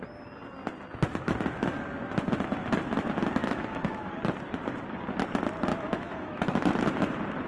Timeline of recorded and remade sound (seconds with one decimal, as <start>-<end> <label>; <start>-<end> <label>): 0.0-3.4 recorded; 3.4-4.1 remade; 4.1-5.7 recorded; 5.7-6.7 remade; 6.7-7.5 recorded